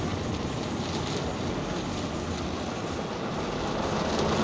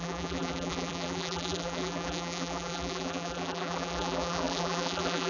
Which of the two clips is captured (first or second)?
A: first